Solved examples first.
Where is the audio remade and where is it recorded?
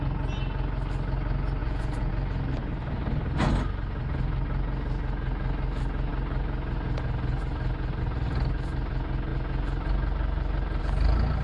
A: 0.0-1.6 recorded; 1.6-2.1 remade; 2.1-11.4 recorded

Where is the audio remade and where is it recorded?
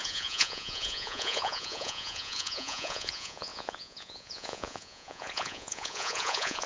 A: 0.0-6.7 remade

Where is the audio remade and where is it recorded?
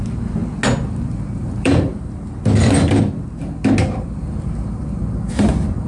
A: 0.0-0.4 remade; 0.4-0.9 recorded; 0.9-2.4 remade; 2.4-3.8 recorded; 3.8-5.9 remade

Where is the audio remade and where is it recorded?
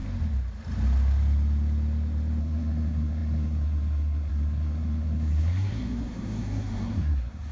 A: 0.0-2.4 recorded; 2.4-7.5 remade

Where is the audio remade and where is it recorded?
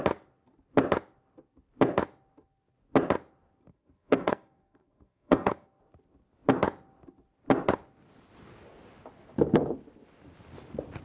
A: 0.0-3.7 recorded; 3.7-5.8 remade; 5.8-11.0 recorded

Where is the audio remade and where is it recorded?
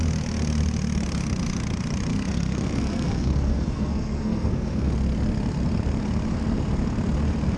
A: 0.0-2.1 recorded; 2.1-4.9 remade; 4.9-7.6 recorded